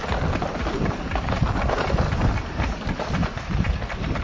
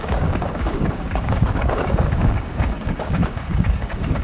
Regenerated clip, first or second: second